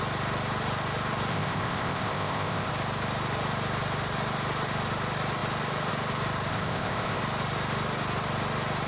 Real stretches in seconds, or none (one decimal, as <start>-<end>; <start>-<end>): 0.0-1.3; 2.7-6.5; 7.2-8.9